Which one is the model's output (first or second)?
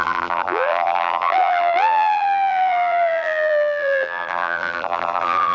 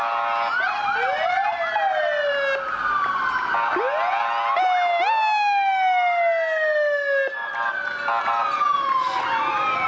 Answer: first